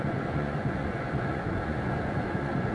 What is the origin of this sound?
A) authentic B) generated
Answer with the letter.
B